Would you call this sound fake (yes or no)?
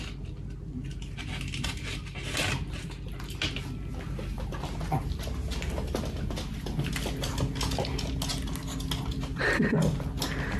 no